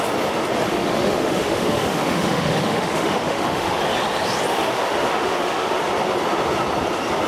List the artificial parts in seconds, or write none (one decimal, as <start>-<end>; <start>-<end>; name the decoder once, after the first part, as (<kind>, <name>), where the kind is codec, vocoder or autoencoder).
0.7-3.8 (autoencoder, DAC-VAE); 4.5-5.8